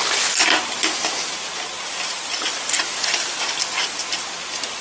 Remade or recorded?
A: recorded